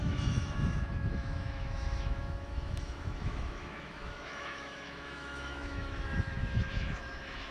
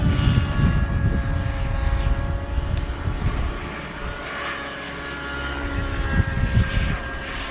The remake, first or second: first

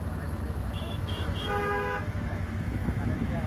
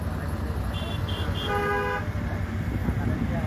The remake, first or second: first